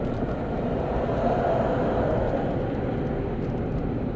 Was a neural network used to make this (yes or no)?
no